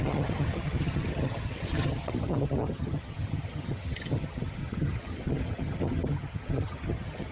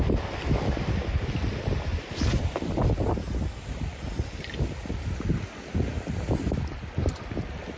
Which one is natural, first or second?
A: second